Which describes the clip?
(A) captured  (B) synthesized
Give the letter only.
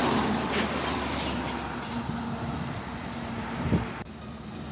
A